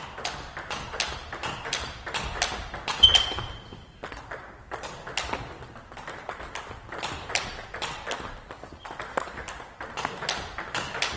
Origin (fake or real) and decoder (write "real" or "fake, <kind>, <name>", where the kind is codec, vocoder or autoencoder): real